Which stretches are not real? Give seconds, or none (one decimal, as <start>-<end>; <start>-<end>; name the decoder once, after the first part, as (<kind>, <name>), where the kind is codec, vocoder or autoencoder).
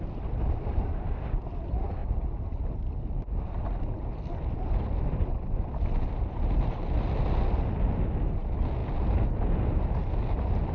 none